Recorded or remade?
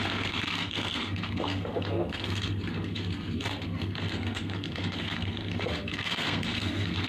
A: remade